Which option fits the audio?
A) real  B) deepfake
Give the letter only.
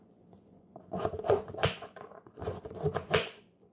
B